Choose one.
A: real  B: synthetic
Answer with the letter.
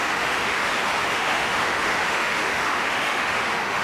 B